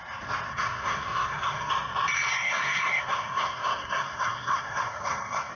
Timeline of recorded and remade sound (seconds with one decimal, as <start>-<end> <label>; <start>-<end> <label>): 0.0-0.5 recorded; 0.5-1.7 remade; 1.7-2.3 recorded; 2.3-5.5 remade